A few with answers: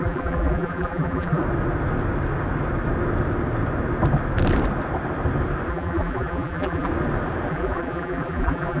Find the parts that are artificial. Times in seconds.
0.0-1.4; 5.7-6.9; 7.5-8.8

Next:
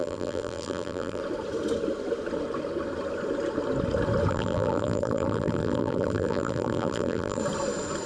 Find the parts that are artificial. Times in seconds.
0.0-1.2; 4.3-7.4